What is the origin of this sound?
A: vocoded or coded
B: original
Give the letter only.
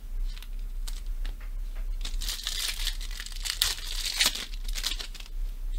B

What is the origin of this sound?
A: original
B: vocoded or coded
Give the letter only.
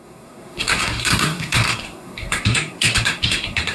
B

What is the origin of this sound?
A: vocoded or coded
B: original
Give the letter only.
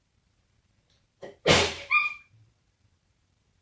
A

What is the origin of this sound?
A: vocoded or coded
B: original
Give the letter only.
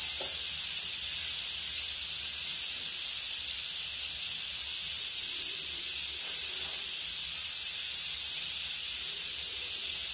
B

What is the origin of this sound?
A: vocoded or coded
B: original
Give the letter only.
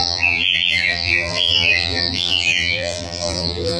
A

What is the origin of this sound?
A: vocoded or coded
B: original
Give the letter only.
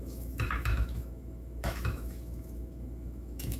A